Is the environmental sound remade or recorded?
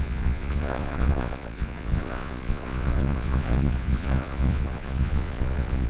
remade